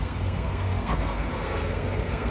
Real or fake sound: fake